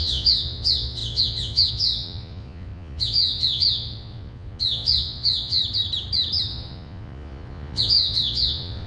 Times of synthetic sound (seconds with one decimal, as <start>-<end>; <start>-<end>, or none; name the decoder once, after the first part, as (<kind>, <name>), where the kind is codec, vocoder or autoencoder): 0.0-5.6 (vocoder, Vocos); 6.5-8.9